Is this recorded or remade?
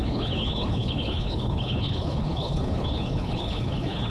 remade